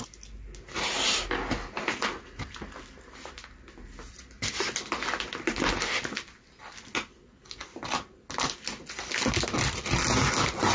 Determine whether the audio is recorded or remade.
recorded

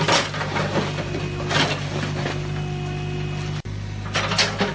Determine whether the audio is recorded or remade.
recorded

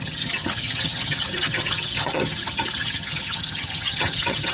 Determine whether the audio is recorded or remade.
remade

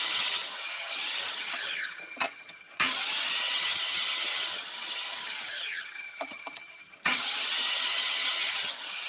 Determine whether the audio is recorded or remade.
remade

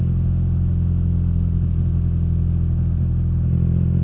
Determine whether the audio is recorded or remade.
recorded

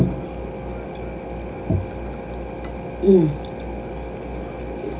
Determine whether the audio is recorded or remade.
recorded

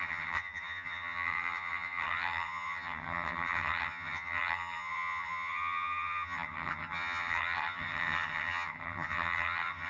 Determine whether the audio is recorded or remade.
remade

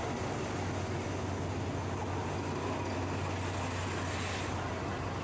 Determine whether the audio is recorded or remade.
recorded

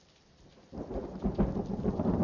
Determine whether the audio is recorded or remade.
recorded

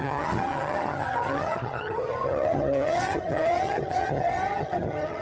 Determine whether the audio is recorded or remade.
remade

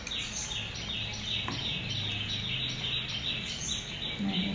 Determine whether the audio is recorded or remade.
recorded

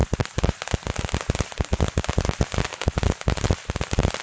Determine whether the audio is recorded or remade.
recorded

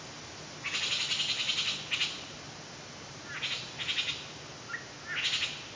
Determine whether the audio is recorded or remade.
recorded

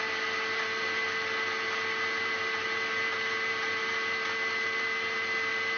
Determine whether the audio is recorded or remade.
recorded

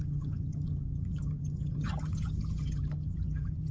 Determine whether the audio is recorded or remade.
remade